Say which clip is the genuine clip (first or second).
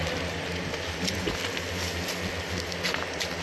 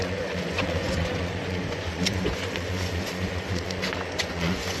first